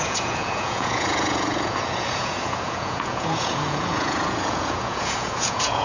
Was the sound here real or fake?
fake